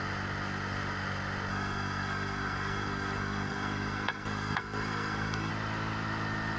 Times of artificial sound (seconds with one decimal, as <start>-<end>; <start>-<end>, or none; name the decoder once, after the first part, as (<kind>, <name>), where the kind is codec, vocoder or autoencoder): 1.5-5.5 (codec, SNAC)